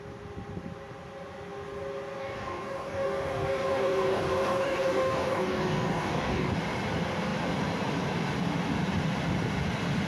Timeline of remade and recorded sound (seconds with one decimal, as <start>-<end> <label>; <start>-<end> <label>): 0.0-2.2 recorded; 2.2-6.5 remade; 6.5-10.1 recorded